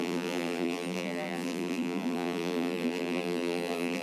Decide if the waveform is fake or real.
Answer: fake